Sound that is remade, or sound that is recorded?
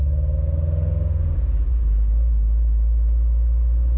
recorded